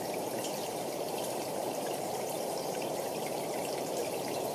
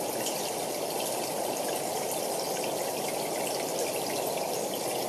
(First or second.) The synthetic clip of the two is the first